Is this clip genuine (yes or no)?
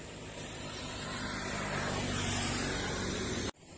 no